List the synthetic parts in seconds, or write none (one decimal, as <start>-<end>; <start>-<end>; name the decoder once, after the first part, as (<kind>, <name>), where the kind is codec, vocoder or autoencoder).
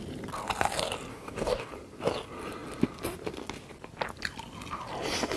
1.1-1.7 (codec, DAC)